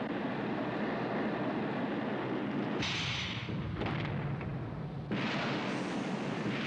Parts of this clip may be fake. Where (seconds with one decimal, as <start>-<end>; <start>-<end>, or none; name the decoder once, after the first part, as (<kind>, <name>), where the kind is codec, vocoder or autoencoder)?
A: none